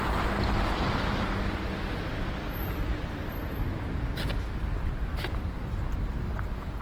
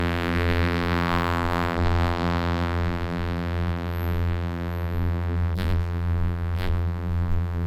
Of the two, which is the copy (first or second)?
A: second